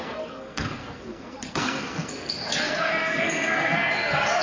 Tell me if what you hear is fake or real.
fake